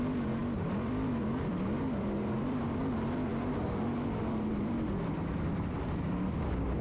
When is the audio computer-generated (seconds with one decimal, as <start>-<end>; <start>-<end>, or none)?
0.0-6.8